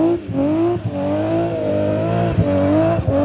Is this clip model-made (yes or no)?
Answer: no